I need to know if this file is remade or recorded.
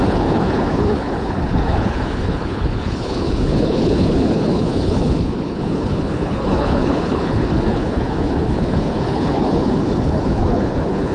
remade